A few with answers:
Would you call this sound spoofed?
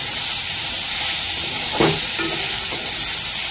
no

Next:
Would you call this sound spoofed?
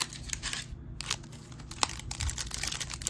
no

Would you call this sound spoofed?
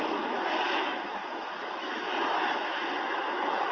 yes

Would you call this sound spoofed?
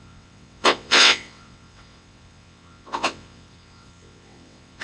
yes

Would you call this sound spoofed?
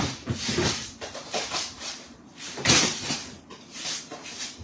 yes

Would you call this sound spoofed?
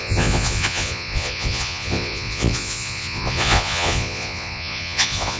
yes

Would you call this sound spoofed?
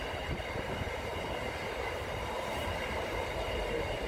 yes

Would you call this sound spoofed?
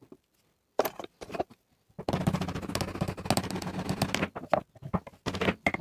no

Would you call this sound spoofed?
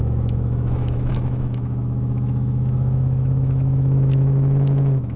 yes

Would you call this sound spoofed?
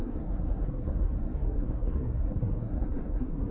yes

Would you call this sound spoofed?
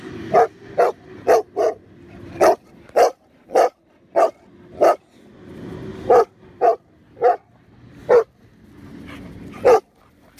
no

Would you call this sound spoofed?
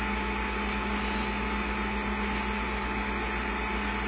no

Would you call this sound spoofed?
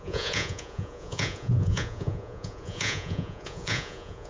yes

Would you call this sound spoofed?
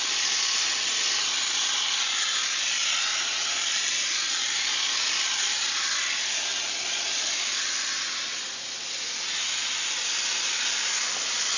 no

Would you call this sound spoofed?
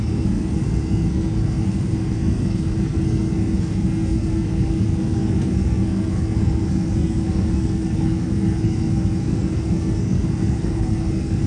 yes